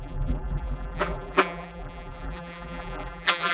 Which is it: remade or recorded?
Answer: remade